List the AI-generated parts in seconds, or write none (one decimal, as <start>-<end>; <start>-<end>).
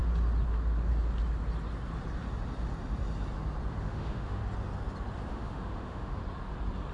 3.8-4.4; 5.3-6.2